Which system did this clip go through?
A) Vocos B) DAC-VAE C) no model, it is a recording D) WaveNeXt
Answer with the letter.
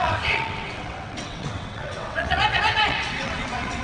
D